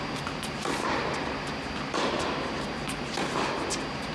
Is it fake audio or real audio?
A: real